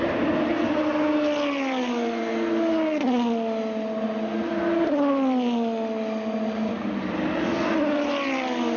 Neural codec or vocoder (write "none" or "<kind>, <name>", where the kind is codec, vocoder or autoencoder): none